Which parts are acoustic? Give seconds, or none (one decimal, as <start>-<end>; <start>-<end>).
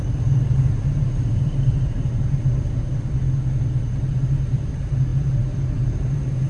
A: 2.9-4.1